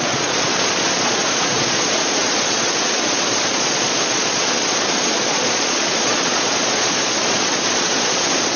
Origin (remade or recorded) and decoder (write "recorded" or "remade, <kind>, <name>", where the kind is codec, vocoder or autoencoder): remade, vocoder, Vocos